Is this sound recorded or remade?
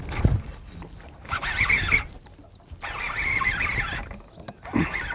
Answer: recorded